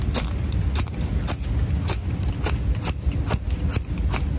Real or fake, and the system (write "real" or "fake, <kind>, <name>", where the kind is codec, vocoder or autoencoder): real